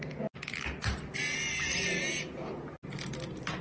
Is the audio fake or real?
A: real